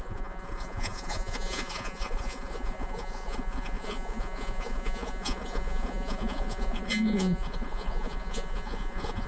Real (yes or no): no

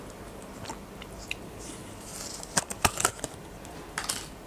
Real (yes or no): no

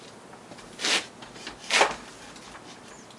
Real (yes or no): yes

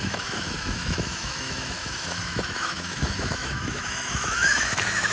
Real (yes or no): no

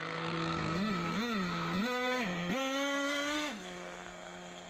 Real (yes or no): no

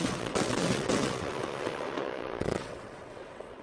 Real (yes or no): no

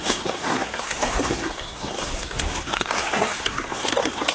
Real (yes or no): no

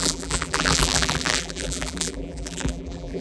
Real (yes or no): no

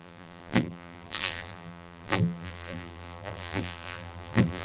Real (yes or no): no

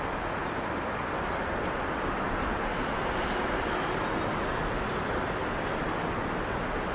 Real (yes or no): yes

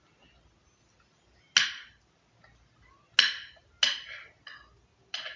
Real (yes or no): yes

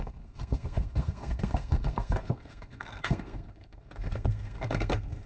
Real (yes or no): no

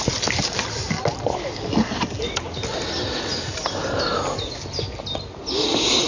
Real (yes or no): yes